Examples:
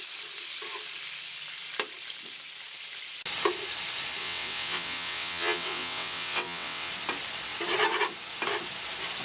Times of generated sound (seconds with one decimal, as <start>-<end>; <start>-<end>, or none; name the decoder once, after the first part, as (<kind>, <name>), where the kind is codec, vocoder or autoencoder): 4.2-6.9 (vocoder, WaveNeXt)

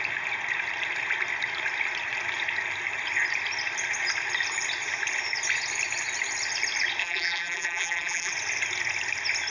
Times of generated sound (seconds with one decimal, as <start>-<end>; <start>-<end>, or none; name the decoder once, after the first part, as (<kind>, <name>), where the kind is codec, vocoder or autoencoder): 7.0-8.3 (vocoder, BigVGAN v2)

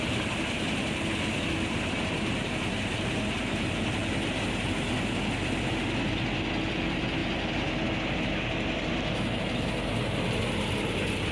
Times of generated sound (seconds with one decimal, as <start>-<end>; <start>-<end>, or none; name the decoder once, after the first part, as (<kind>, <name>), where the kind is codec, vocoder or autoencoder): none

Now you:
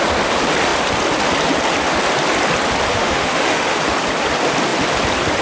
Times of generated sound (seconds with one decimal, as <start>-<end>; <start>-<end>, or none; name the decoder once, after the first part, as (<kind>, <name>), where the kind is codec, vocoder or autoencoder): 2.9-3.8 (autoencoder, DAC-VAE)

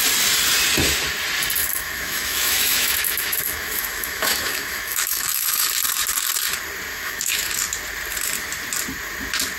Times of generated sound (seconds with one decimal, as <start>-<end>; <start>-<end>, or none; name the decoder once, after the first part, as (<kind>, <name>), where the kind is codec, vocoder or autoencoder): 1.6-5.7 (autoencoder, DAC-VAE); 6.9-7.5

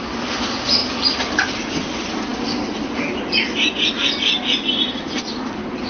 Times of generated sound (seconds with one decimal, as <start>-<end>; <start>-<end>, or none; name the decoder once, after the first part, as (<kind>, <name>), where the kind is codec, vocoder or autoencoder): none